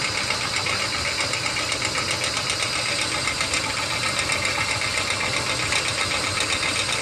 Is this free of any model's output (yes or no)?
yes